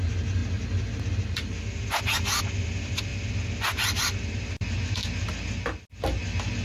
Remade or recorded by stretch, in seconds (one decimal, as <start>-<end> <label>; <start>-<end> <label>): 0.0-6.6 recorded